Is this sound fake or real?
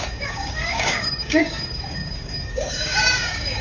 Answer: fake